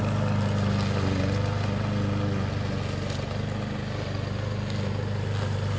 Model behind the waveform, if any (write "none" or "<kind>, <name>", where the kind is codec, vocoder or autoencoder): none